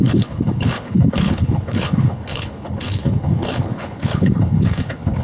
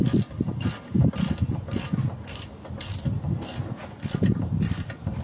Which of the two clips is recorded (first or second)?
second